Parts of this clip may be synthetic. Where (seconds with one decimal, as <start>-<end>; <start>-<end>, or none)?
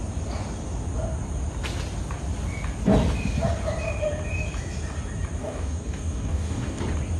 5.4-6.8